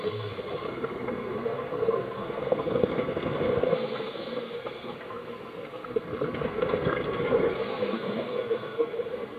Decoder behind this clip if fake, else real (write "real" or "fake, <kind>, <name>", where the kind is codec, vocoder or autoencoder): fake, codec, SNAC